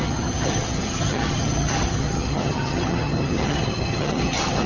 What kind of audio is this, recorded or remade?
remade